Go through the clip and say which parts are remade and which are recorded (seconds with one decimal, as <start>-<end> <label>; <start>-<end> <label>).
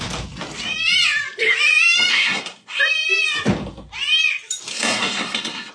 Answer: 0.0-2.1 recorded; 2.1-2.8 remade; 2.8-4.7 recorded; 4.7-5.7 remade